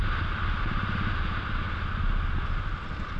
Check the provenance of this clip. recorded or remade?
recorded